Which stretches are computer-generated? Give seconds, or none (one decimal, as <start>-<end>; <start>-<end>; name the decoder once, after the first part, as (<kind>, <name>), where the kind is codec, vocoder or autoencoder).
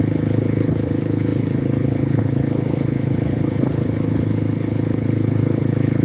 0.0-6.0 (codec, HILCodec)